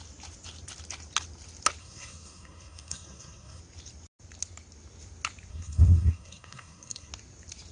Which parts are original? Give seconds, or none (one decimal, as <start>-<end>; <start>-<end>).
0.0-1.8; 3.6-5.5; 7.1-7.7